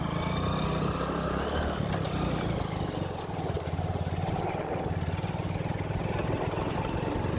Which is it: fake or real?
real